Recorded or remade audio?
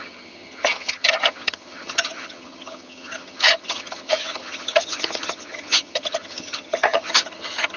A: remade